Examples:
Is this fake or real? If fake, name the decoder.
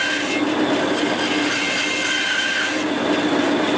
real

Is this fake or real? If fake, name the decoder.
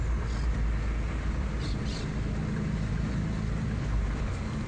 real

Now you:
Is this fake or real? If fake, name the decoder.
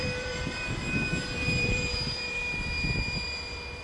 fake, vocoder, BigVGAN v2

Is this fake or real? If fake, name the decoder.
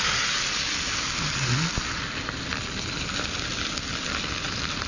real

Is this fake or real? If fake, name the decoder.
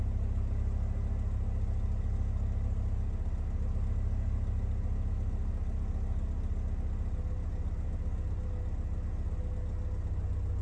real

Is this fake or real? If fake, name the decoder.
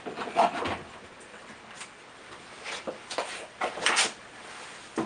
real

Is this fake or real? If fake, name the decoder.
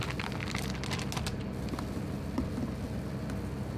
real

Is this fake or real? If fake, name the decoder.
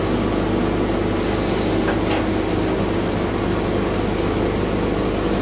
real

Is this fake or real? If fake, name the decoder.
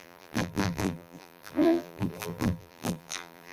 fake, vocoder, BigVGAN v2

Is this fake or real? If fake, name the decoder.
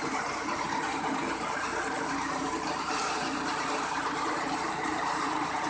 fake, vocoder, BigVGAN v2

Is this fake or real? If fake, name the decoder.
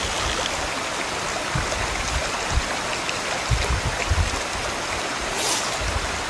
real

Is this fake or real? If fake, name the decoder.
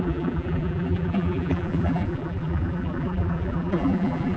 fake, vocoder, BigVGAN v2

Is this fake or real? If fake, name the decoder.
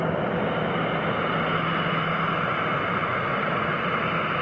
real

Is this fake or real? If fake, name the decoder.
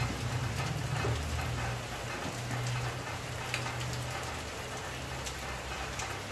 real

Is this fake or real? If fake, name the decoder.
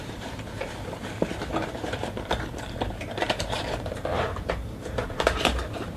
fake, vocoder, BigVGAN v2